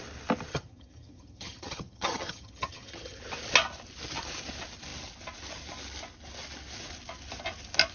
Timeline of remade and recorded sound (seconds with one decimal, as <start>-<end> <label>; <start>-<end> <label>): 0.0-0.5 recorded; 0.5-3.2 remade; 3.2-7.9 recorded